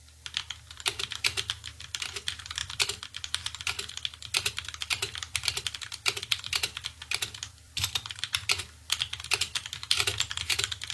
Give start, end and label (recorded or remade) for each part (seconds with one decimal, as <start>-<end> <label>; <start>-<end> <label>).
0.0-10.9 remade